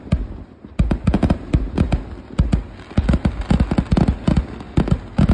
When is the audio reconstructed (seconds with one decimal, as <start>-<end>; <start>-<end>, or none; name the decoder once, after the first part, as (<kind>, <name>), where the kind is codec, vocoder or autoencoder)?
0.0-1.0 (vocoder, BigVGAN v2)